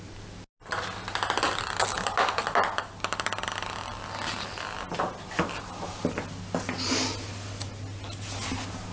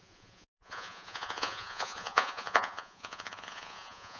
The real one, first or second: first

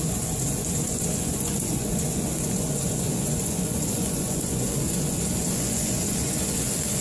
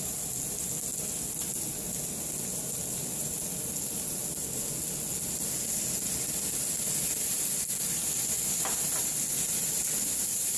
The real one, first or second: second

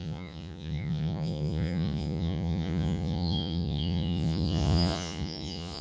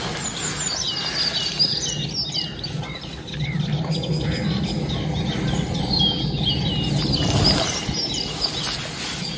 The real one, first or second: second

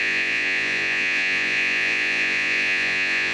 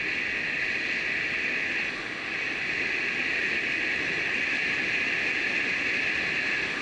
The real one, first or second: second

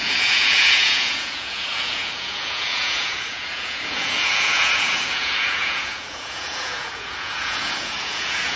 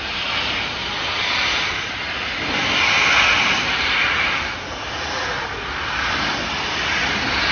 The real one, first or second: second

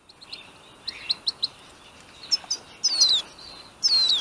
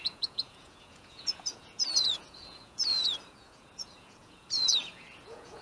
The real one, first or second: first